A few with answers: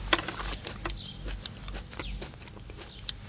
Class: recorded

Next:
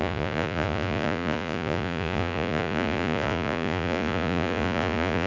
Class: remade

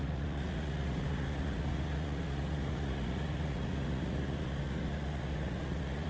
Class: remade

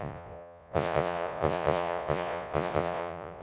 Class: remade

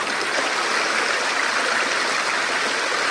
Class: recorded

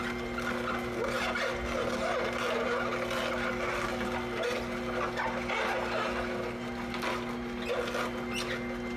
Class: recorded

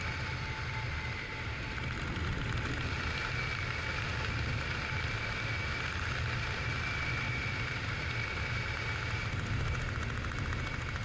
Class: recorded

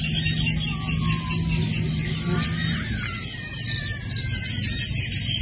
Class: recorded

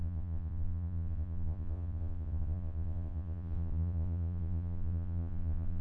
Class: remade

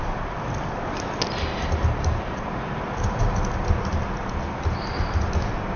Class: recorded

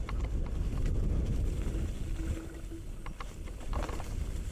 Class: recorded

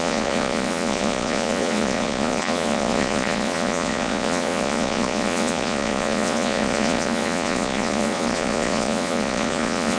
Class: remade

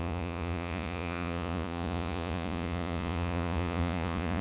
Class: remade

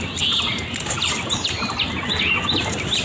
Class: recorded